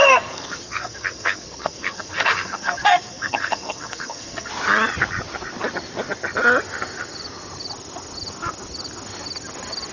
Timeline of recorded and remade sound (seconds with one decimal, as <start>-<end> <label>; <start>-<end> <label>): 0.0-4.5 remade; 4.5-9.9 recorded